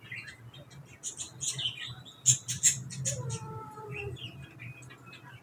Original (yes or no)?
yes